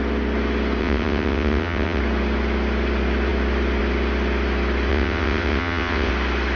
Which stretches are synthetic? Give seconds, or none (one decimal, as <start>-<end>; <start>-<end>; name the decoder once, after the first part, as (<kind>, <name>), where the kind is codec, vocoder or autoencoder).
0.8-2.0 (vocoder, WaveNeXt); 4.9-6.1